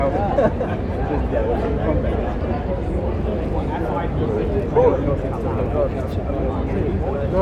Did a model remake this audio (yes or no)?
no